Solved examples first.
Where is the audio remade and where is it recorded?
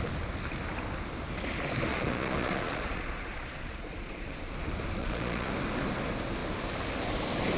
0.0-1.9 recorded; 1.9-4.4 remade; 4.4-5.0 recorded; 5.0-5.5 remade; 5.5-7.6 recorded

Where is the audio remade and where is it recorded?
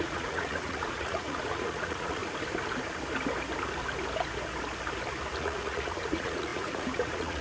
0.0-2.2 remade; 2.2-5.4 recorded; 5.4-7.4 remade